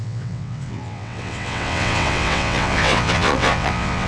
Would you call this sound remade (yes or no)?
yes